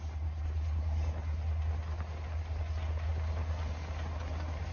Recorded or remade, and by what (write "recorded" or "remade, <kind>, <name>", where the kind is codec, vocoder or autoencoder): recorded